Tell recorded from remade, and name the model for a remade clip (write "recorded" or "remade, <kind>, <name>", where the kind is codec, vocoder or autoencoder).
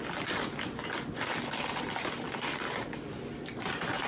remade, vocoder, BigVGAN v2